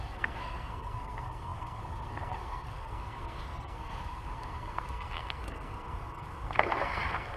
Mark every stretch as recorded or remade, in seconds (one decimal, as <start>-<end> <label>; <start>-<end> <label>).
0.0-7.4 remade